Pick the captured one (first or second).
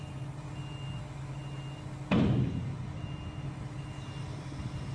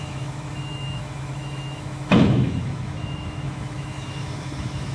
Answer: first